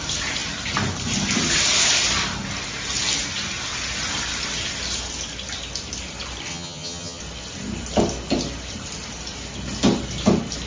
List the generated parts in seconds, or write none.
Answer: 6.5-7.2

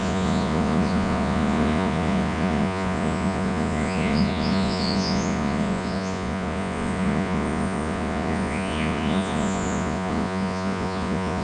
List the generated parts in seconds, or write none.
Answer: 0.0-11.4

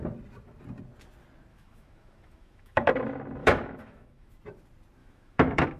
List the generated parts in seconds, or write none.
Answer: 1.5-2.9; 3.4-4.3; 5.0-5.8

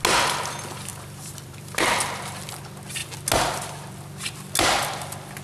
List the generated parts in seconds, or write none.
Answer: 0.9-2.0

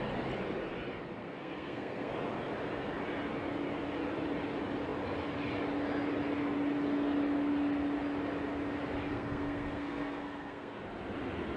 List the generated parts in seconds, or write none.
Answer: 1.2-2.1; 9.1-10.8

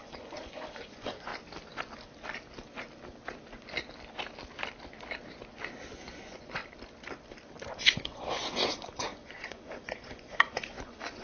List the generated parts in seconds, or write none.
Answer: 0.0-1.3; 6.0-6.6; 7.8-11.2

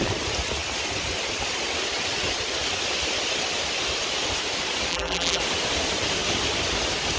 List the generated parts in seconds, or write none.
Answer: 4.9-5.4

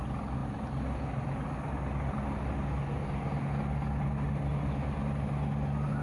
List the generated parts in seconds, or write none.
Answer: none